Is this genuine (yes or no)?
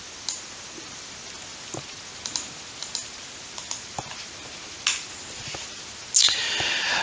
yes